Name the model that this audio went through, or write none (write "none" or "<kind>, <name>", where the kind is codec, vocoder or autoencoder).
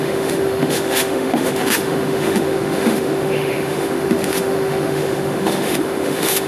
autoencoder, DAC-VAE